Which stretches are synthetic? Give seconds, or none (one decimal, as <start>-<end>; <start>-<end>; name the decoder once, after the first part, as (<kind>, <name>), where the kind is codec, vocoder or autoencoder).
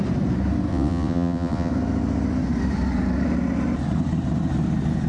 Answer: 0.7-1.7 (vocoder, WaveNeXt)